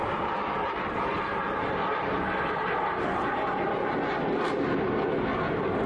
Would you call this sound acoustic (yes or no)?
yes